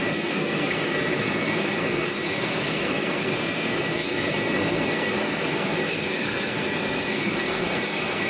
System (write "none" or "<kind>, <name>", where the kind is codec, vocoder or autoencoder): codec, SNAC